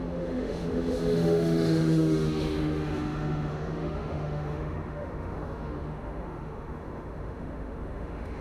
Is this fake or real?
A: fake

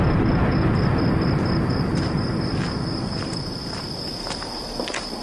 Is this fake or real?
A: real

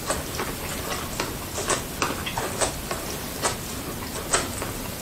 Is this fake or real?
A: real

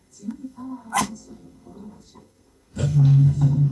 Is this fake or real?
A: fake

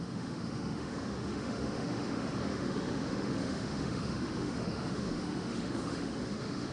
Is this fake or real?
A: fake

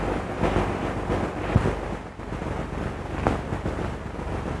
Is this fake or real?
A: real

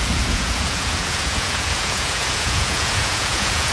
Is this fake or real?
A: fake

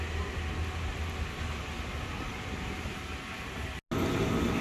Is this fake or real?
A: real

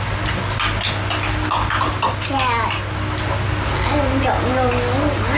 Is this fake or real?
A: real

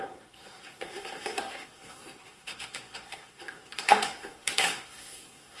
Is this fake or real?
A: fake